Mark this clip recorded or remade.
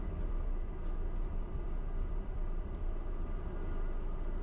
recorded